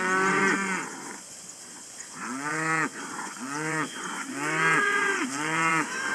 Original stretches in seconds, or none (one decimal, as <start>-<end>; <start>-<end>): none